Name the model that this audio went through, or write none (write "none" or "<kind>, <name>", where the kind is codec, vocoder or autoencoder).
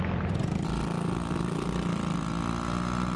none